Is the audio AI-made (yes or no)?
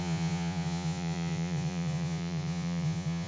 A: yes